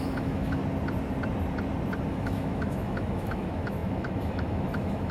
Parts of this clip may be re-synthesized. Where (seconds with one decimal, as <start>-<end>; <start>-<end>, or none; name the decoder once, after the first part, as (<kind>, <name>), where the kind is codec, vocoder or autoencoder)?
0.0-0.6 (autoencoder, DAC-VAE); 2.1-5.1